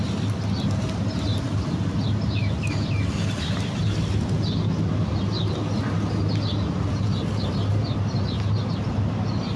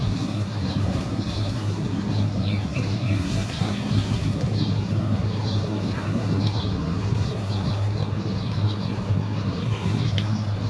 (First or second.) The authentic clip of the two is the first